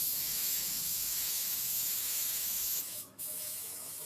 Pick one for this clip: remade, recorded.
remade